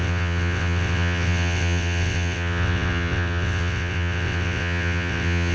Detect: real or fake fake